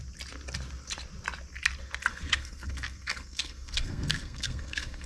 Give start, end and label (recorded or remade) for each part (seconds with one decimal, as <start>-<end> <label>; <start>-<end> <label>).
0.0-2.1 recorded; 2.1-5.1 remade